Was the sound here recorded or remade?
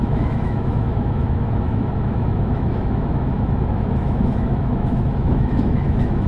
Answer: remade